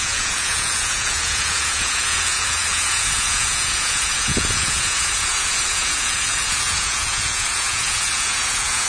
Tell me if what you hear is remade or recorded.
remade